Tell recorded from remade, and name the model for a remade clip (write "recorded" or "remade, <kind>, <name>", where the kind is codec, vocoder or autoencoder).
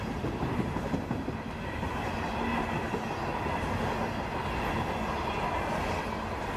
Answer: recorded